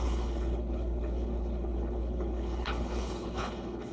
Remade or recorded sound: remade